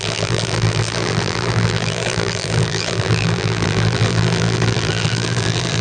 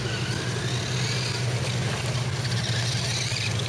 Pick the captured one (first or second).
second